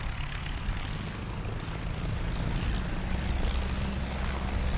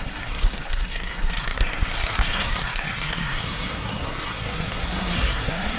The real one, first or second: first